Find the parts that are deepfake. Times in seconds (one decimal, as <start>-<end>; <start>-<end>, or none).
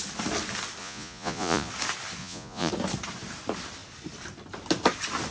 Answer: 0.8-1.7; 2.2-2.7